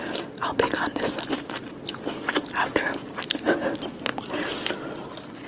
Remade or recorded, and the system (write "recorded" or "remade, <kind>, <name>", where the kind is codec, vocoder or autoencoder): recorded